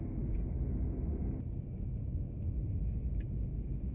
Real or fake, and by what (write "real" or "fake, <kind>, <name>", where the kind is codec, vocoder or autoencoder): real